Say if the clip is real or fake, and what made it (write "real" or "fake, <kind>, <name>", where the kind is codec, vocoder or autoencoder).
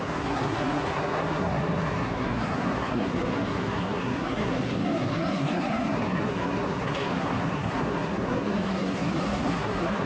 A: fake, codec, SNAC